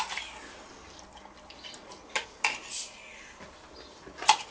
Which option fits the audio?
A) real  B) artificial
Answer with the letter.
A